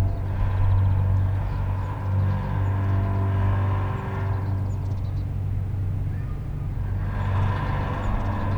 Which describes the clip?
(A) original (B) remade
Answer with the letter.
A